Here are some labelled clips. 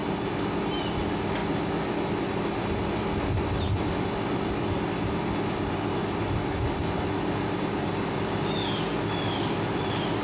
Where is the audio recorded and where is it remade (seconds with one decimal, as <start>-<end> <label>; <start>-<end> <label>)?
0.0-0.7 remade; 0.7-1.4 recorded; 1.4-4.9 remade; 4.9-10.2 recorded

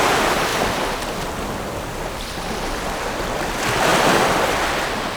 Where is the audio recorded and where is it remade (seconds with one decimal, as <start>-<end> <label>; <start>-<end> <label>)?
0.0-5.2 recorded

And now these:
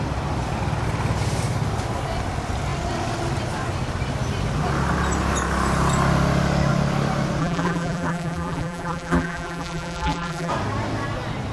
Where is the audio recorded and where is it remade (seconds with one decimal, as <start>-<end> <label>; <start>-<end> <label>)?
0.0-7.4 recorded; 7.4-10.5 remade; 10.5-11.5 recorded

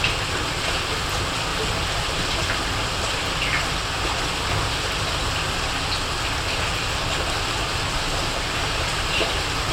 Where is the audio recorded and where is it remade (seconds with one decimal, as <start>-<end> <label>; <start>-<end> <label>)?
0.0-9.7 recorded